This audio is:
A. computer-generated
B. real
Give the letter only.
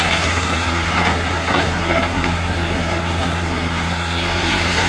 A